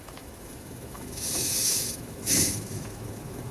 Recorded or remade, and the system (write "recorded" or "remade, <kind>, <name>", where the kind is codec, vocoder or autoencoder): remade, autoencoder, DAC-VAE